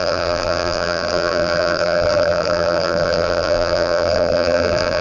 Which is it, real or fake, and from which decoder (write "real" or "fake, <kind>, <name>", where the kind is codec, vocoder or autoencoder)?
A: fake, vocoder, BigVGAN v2